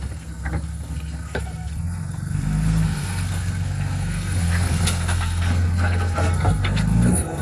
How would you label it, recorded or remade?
remade